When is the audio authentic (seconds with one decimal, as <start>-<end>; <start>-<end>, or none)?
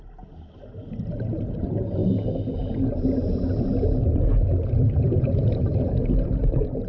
0.0-6.9